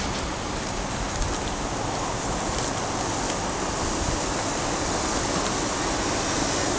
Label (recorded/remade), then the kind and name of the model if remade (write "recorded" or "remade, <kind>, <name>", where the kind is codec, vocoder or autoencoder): recorded